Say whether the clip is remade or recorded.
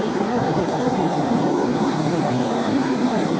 remade